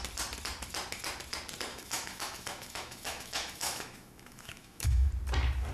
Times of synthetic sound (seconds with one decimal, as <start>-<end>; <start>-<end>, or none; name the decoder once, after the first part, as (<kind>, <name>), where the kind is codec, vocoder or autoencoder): 1.7-5.1 (autoencoder, DAC-VAE)